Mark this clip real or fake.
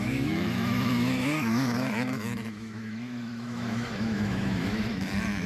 fake